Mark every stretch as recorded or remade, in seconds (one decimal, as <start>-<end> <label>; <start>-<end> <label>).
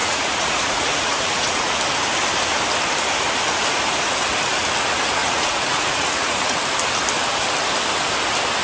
0.0-1.8 remade; 1.8-5.2 recorded; 5.2-6.6 remade; 6.6-8.6 recorded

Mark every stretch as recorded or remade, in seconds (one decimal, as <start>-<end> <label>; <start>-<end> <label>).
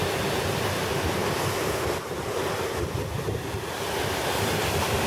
0.0-1.2 recorded; 1.2-4.3 remade; 4.3-5.1 recorded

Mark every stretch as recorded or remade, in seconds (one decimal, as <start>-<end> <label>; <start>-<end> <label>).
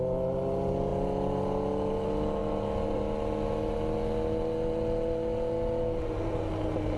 0.0-7.0 recorded